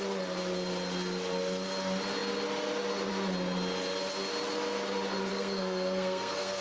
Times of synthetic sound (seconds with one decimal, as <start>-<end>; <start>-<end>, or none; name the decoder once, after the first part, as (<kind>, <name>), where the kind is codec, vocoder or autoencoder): 5.3-6.6 (codec, SNAC)